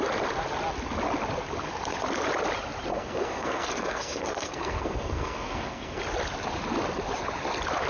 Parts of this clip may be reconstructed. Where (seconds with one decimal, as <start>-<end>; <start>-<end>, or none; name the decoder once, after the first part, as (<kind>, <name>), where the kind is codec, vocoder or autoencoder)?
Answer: 2.9-6.0 (codec, SNAC)